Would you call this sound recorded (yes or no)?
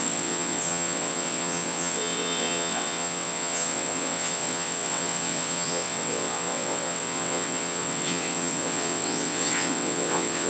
no